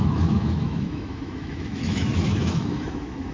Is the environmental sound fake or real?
fake